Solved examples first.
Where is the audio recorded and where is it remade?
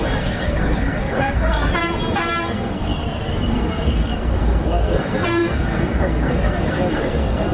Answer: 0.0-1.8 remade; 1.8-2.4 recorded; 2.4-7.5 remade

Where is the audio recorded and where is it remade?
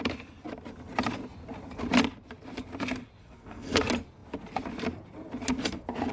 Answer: 0.0-3.2 recorded; 3.2-3.8 remade; 3.8-6.1 recorded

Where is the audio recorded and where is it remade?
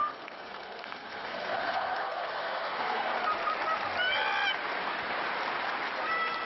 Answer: 0.0-3.2 remade; 3.2-6.4 recorded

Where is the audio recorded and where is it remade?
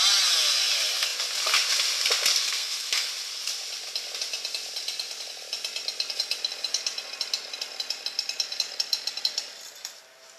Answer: 0.0-2.4 recorded; 2.4-3.1 remade; 3.1-10.4 recorded